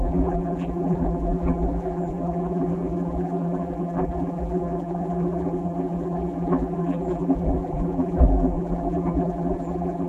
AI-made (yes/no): yes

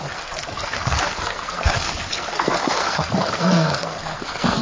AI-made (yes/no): yes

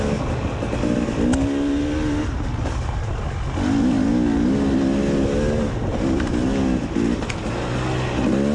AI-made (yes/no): no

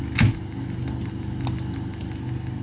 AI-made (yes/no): no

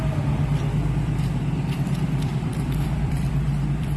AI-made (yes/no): yes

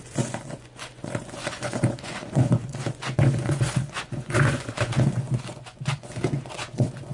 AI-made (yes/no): yes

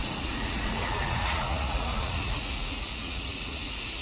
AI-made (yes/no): yes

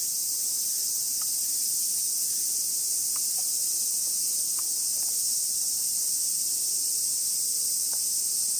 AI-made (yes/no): no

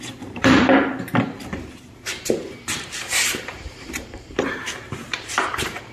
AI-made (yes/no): yes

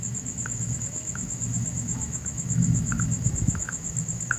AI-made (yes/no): yes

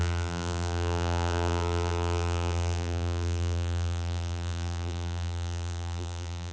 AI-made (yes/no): yes